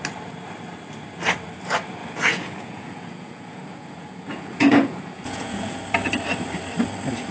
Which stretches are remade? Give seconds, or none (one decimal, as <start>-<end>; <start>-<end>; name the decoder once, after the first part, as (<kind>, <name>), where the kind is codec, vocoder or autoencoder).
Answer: 2.0-5.8 (vocoder, Vocos)

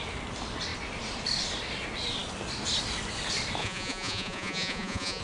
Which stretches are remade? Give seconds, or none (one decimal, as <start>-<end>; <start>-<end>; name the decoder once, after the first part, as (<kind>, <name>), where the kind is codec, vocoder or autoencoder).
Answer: 3.6-5.2 (vocoder, Vocos)

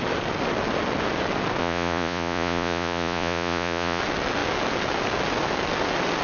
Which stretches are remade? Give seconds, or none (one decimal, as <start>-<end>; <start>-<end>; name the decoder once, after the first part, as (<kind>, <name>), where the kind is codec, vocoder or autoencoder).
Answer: 1.6-4.0 (vocoder, Vocos)

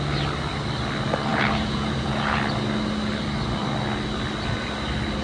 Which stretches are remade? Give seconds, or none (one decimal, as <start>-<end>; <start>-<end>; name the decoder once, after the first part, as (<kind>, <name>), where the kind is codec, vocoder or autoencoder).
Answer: 1.3-2.4 (vocoder, Vocos)

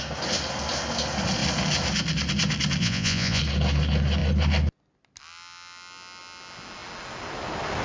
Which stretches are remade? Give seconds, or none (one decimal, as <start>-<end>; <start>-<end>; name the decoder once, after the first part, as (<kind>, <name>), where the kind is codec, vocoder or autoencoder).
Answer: 2.8-3.4 (vocoder, Vocos)

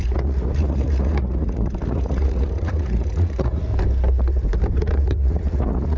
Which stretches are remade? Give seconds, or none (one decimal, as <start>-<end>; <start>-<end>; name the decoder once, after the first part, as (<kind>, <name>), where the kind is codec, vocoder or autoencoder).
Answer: 0.0-3.7 (vocoder, Vocos); 4.8-6.0